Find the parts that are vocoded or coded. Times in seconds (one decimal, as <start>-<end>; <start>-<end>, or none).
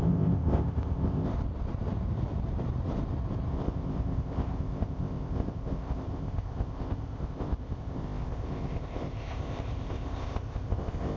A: 0.0-1.3; 3.5-11.2